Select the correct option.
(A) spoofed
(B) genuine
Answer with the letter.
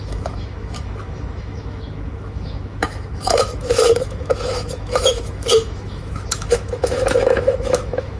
A